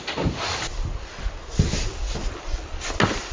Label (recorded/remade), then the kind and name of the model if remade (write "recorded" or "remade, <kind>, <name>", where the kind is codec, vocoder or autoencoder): recorded